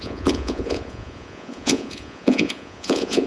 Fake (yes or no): yes